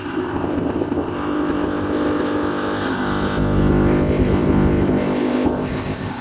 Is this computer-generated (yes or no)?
yes